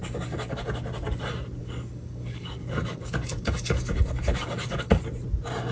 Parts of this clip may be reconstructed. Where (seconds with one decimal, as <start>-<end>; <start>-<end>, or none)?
0.0-0.6; 1.6-5.0